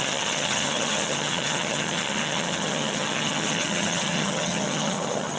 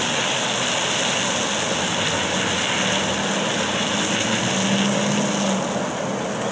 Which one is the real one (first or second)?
second